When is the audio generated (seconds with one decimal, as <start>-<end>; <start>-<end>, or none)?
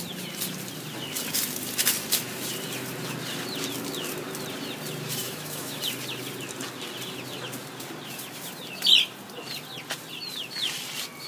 5.2-5.8